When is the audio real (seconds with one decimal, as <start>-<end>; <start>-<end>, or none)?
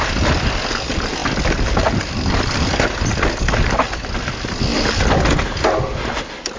0.0-6.6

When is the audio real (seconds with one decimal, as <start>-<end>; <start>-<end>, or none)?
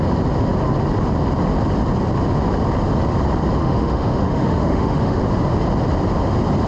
0.0-3.6; 5.2-6.7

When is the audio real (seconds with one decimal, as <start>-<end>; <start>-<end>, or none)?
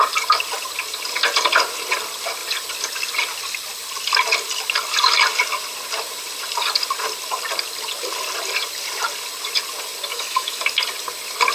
0.0-10.1; 10.6-11.5